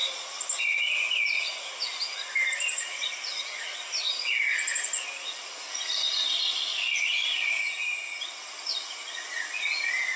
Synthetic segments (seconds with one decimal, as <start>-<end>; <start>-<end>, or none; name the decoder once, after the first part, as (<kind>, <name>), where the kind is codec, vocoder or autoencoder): 7.6-8.2 (vocoder, HiFi-GAN)